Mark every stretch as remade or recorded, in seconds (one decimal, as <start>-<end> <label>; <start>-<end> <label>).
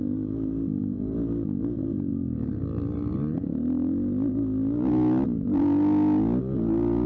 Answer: 0.0-7.1 recorded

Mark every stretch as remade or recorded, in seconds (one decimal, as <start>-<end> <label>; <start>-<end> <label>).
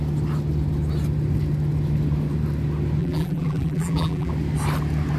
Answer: 0.0-3.0 recorded; 3.0-4.3 remade; 4.3-5.2 recorded